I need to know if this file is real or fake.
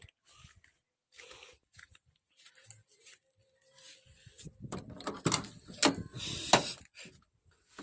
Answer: real